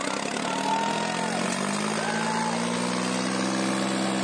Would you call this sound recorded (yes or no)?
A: yes